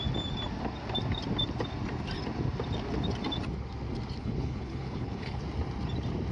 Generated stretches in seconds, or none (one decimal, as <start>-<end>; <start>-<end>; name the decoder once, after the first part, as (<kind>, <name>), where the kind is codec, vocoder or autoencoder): 4.2-5.4 (codec, HILCodec)